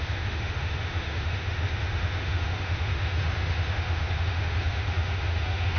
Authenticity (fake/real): fake